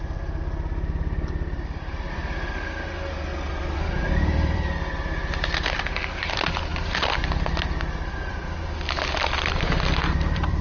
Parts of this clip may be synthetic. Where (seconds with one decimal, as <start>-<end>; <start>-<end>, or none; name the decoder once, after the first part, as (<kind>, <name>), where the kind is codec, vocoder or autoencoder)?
0.0-2.2 (vocoder, BigVGAN v2); 3.5-5.2; 6.2-10.6